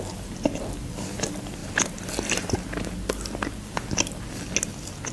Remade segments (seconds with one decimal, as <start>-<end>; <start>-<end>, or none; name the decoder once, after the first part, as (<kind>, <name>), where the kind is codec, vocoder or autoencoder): none